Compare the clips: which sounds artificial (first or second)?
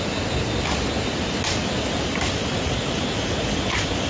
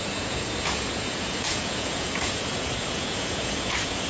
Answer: second